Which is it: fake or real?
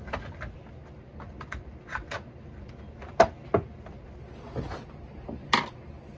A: real